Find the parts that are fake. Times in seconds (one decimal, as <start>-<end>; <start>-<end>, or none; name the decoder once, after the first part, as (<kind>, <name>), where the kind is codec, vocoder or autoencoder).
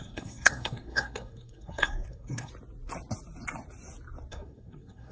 0.0-2.5 (codec, SNAC); 4.3-5.1